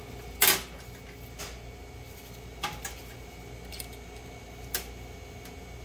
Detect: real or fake real